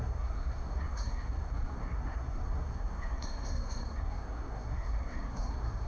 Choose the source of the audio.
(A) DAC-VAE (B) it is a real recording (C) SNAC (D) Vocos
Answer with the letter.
C